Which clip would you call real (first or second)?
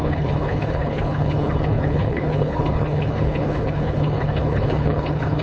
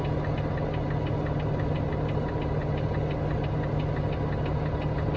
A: second